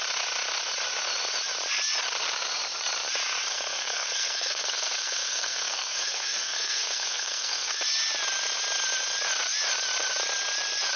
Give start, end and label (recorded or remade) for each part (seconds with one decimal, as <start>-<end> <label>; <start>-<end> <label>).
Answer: 0.0-3.5 recorded; 3.5-7.8 remade; 7.8-11.0 recorded